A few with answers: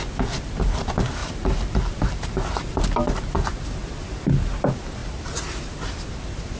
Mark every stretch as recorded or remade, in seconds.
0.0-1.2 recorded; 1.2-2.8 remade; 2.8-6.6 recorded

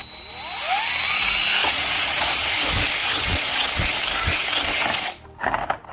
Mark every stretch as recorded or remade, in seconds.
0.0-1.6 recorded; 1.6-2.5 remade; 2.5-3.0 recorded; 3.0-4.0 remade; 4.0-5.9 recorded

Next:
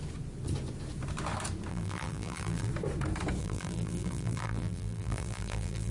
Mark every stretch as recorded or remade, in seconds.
0.0-1.7 recorded; 1.7-2.7 remade; 2.7-3.4 recorded; 3.4-5.9 remade

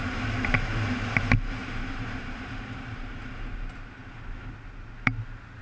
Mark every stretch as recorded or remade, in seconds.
0.0-1.6 recorded; 1.6-3.3 remade; 3.3-5.6 recorded

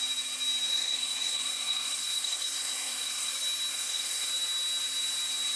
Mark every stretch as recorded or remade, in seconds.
0.0-0.7 recorded; 0.7-3.3 remade; 3.3-3.7 recorded; 3.7-4.3 remade; 4.3-5.6 recorded

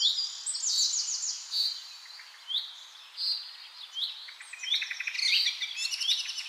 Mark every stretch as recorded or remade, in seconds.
0.0-6.5 recorded

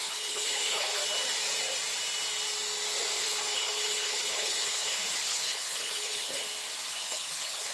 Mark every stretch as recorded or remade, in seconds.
0.0-1.0 remade; 1.0-3.2 recorded; 3.2-6.4 remade; 6.4-6.9 recorded; 6.9-7.7 remade